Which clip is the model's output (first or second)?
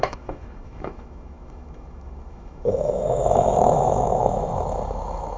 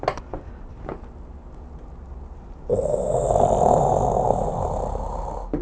first